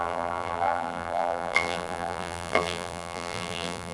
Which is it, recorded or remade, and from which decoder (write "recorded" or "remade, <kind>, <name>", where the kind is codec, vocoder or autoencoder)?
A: remade, vocoder, BigVGAN v2